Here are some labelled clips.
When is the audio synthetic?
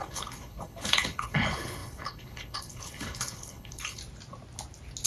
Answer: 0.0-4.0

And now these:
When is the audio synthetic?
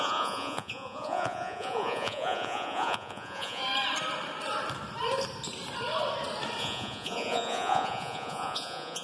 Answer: 0.0-3.6; 6.6-9.0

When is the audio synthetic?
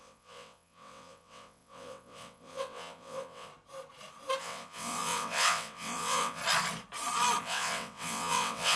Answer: 0.0-3.5; 4.4-6.4; 7.4-8.8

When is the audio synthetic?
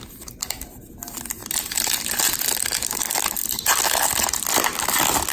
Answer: none